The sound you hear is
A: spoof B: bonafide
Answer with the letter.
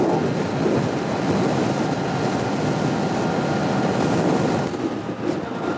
B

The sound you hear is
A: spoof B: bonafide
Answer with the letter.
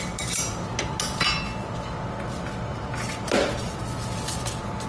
B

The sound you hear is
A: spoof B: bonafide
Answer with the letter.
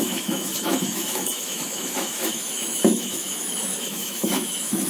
A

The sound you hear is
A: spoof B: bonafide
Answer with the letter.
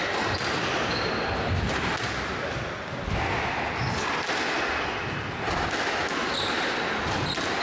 B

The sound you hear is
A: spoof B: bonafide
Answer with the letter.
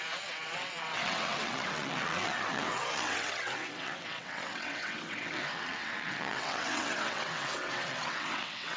A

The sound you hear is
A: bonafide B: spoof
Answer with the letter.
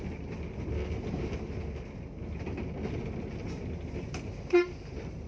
A